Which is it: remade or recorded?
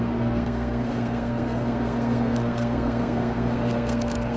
remade